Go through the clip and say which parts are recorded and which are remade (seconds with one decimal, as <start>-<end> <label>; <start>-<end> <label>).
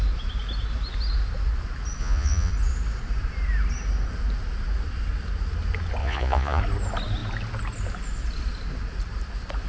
0.0-2.0 recorded; 2.0-2.5 remade; 2.5-6.0 recorded; 6.0-6.6 remade; 6.6-9.7 recorded